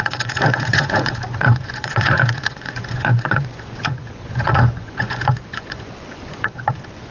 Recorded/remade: remade